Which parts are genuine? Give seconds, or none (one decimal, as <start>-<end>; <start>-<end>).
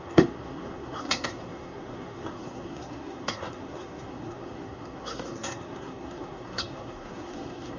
none